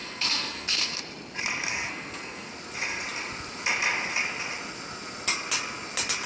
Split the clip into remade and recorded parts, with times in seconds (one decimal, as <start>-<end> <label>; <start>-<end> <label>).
0.0-1.0 remade; 1.0-1.7 recorded; 1.7-2.5 remade; 2.5-6.3 recorded